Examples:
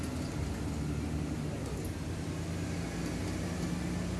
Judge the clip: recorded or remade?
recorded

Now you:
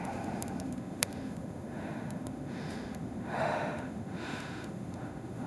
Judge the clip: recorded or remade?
remade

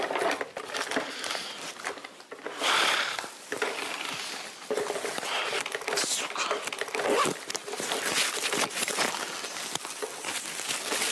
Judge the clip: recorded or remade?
recorded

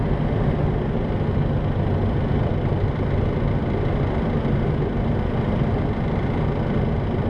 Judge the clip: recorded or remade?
recorded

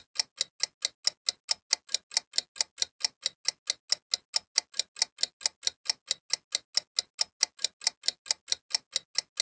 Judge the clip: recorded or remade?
recorded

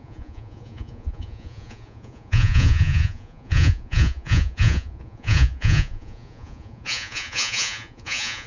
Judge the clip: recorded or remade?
remade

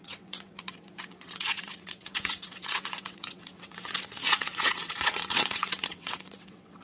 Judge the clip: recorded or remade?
remade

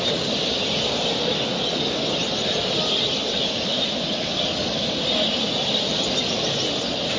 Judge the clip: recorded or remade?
recorded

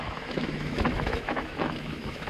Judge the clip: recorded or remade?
remade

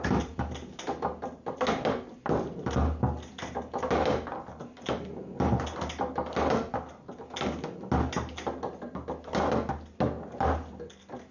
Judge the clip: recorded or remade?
recorded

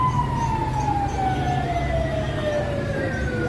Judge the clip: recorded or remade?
recorded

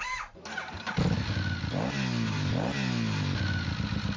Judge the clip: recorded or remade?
recorded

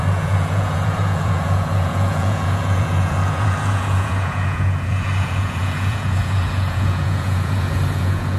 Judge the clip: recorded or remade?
remade